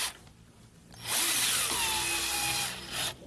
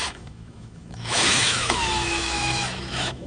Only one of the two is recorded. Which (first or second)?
first